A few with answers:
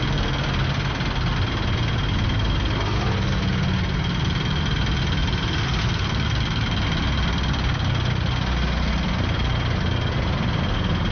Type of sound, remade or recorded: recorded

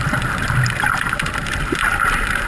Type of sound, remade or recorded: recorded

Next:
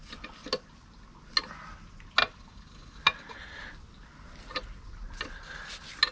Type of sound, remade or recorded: recorded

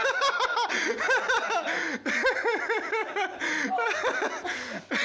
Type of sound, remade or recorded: recorded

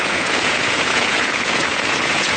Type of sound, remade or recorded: remade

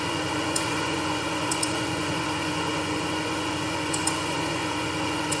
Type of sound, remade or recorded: remade